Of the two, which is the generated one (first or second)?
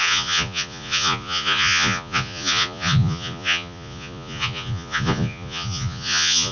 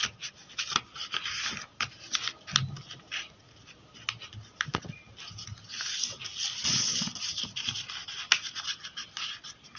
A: first